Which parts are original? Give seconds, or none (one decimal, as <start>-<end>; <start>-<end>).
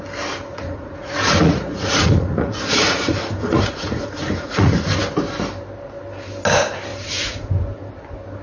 0.0-0.5; 4.9-6.9; 7.5-8.4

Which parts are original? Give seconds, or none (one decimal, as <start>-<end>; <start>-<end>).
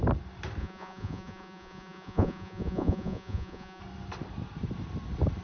0.0-0.6; 3.8-5.4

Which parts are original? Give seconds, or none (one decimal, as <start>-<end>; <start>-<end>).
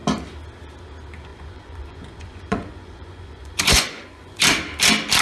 0.0-1.3; 4.4-5.2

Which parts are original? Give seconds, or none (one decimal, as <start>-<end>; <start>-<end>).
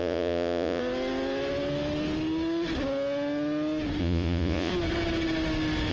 0.8-4.0; 4.7-5.9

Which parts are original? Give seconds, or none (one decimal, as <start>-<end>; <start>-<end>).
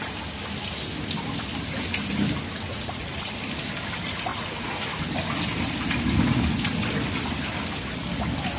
0.0-2.7; 3.3-4.3; 5.0-8.6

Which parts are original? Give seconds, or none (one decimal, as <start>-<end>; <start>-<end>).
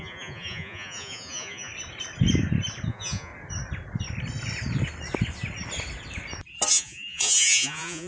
1.7-2.9; 3.3-6.7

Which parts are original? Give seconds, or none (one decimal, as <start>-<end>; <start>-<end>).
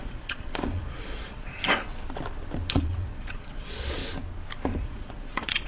1.6-2.7; 4.0-4.8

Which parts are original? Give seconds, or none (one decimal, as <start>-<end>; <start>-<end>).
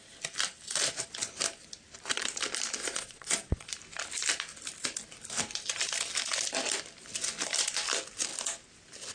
0.0-2.8; 3.7-9.1